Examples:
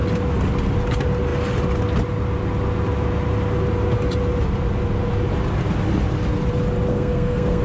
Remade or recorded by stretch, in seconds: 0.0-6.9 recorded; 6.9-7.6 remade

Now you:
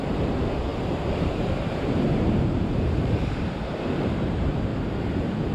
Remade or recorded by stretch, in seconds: 0.0-4.7 remade; 4.7-5.5 recorded

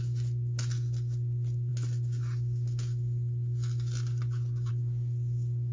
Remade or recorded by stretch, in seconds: 0.0-5.7 recorded

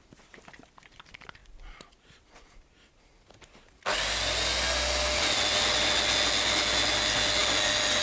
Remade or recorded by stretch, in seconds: 0.0-8.0 recorded